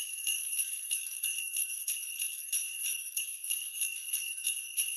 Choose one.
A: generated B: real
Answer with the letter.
A